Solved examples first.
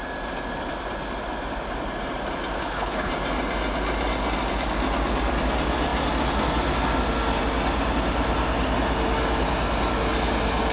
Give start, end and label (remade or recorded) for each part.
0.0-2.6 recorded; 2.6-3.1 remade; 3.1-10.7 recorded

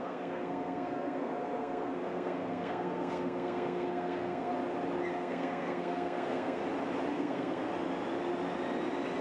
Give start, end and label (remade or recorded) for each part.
0.0-4.5 remade; 4.5-5.1 recorded; 5.1-6.6 remade; 6.6-7.1 recorded; 7.1-7.7 remade; 7.7-9.2 recorded

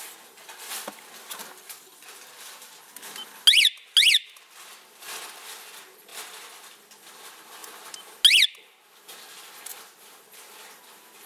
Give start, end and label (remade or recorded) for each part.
0.0-6.1 recorded; 6.1-6.9 remade; 6.9-11.3 recorded

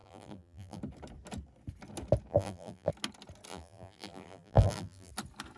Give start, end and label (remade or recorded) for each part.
0.0-0.8 remade; 0.8-2.3 recorded; 2.3-2.9 remade; 2.9-3.5 recorded; 3.5-5.1 remade; 5.1-5.6 recorded

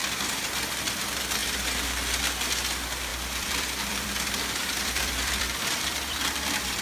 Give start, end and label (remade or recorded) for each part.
0.0-0.6 remade; 0.6-3.1 recorded; 3.1-6.8 remade